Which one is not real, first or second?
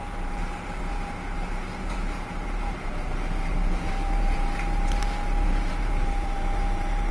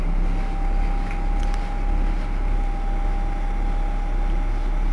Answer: first